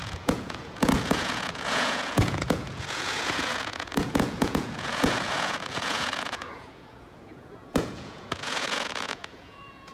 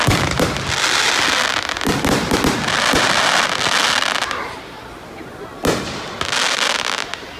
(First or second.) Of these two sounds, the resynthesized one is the first